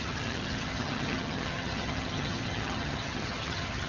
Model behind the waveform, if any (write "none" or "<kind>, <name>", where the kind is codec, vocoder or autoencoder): vocoder, HiFi-GAN